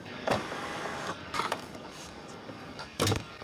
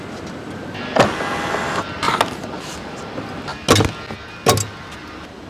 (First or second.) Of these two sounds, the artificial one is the first